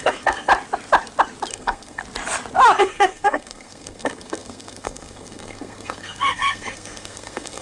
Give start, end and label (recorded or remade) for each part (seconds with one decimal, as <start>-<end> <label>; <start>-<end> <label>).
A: 0.0-0.5 remade; 0.5-1.5 recorded; 1.5-2.0 remade; 2.0-2.8 recorded; 2.8-7.6 remade